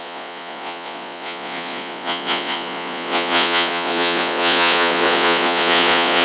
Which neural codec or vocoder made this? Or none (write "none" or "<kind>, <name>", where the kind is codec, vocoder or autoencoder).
vocoder, Vocos